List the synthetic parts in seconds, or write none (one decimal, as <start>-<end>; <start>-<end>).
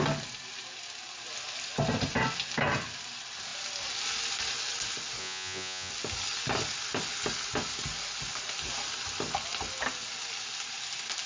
5.2-5.9